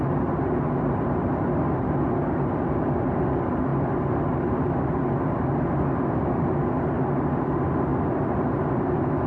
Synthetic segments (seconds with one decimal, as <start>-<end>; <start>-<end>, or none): none